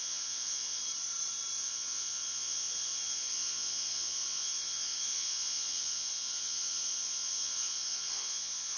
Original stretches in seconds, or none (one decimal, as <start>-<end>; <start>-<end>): 0.8-1.6